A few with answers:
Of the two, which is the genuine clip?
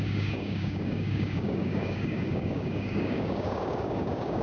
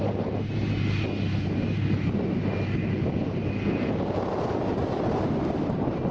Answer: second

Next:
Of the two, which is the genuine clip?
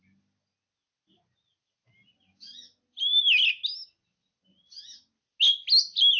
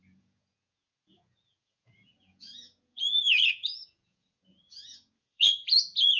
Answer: first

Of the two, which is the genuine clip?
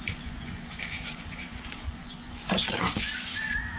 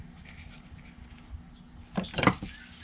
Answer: second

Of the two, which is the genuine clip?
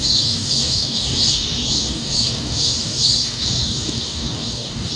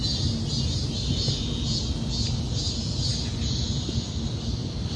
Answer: second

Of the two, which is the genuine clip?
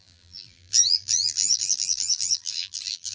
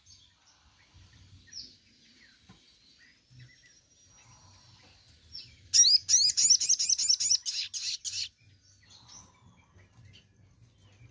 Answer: second